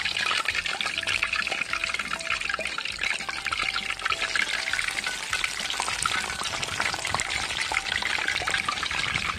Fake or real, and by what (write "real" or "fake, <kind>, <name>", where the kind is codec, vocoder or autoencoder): real